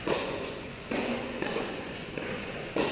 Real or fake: fake